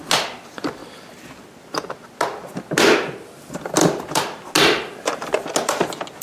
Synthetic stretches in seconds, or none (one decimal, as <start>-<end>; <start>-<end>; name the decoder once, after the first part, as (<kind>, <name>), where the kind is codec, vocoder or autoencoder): none